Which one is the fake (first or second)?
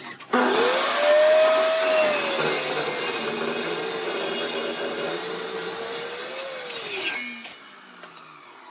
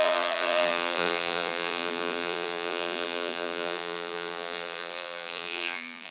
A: second